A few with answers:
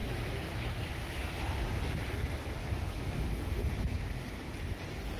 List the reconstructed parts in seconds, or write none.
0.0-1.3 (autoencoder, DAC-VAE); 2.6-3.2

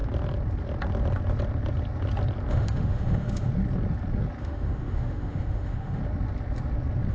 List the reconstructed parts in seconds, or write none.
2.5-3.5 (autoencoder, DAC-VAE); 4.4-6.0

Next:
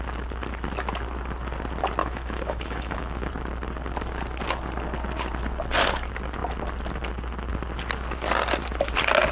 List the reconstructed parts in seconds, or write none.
2.0-3.3 (autoencoder, DAC-VAE)

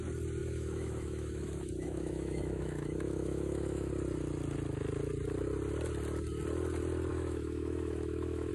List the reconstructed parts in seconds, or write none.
0.4-3.9 (autoencoder, DAC-VAE); 7.1-8.5